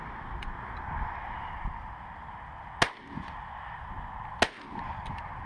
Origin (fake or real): real